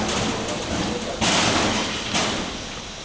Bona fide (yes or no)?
yes